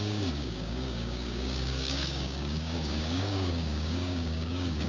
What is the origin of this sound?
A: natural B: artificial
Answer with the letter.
B